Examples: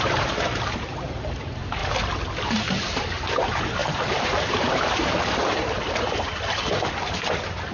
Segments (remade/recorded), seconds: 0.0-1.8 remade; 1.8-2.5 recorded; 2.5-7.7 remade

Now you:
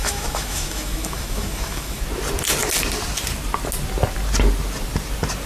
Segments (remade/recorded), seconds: 0.0-2.0 remade; 2.0-5.5 recorded

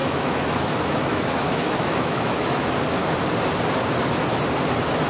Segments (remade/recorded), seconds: 0.0-2.7 remade; 2.7-5.1 recorded

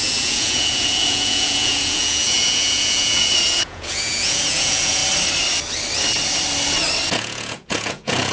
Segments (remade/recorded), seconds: 0.0-5.0 remade; 5.0-7.1 recorded; 7.1-8.3 remade

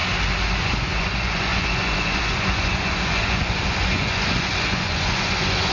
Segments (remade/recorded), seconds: 0.0-0.6 recorded; 0.6-5.7 remade

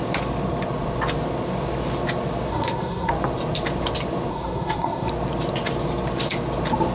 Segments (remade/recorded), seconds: 0.0-2.5 recorded; 2.5-3.1 remade; 3.1-4.3 recorded; 4.3-5.1 remade; 5.1-6.9 recorded